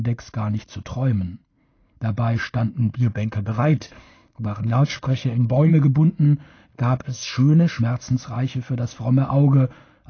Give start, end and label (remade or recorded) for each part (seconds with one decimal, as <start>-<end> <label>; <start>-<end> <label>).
0.0-2.8 recorded; 2.8-5.7 remade; 5.7-6.7 recorded; 6.7-7.8 remade; 7.8-10.1 recorded

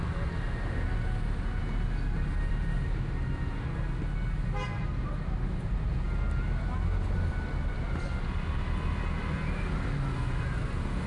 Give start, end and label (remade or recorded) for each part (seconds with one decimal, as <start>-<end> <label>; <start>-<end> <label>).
0.0-11.1 recorded

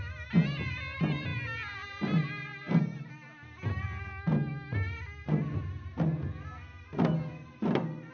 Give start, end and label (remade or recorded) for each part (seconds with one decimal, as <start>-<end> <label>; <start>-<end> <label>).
0.0-8.1 recorded

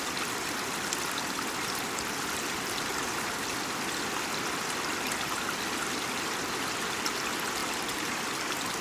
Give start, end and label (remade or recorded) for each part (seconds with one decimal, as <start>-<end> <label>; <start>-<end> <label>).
0.0-7.6 recorded; 7.6-8.2 remade; 8.2-8.8 recorded

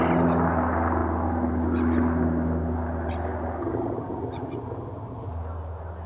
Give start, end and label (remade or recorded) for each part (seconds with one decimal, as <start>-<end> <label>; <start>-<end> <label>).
0.0-3.6 recorded; 3.6-5.3 remade; 5.3-6.1 recorded